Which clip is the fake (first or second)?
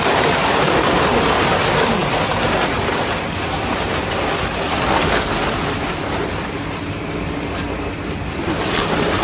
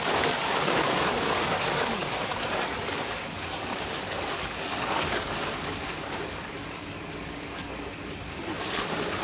second